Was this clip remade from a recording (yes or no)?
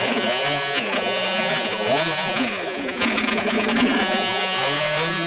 yes